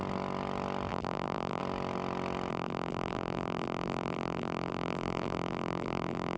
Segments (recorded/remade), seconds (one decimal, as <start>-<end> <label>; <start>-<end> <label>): 0.0-0.9 recorded; 0.9-1.6 remade; 1.6-2.5 recorded; 2.5-6.4 remade